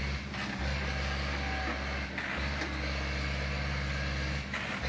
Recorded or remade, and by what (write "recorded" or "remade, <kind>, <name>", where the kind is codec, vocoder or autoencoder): recorded